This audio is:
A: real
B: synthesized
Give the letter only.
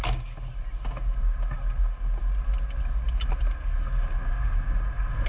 A